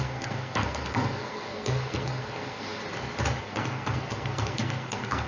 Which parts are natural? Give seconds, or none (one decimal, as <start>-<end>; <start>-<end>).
2.8-3.4